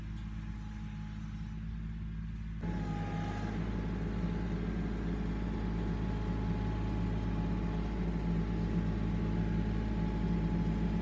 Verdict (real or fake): real